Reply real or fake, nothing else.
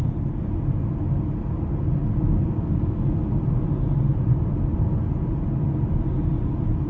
real